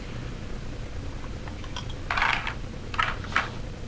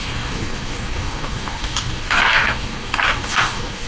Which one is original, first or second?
first